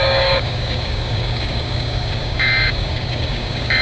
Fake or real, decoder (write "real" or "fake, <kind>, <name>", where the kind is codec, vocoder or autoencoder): fake, codec, DAC